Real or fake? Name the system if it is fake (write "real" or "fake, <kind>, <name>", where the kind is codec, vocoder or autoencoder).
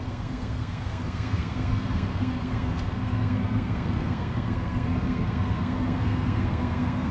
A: fake, codec, SNAC